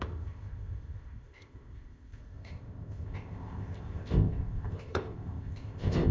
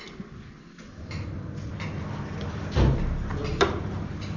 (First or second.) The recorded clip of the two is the second